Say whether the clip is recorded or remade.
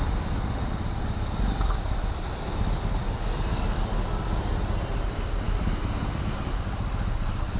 remade